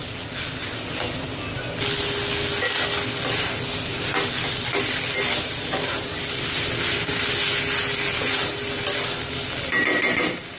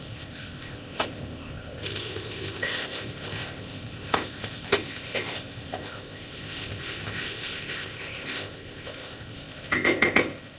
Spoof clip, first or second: second